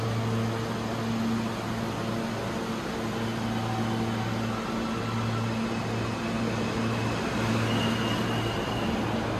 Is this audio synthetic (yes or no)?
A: no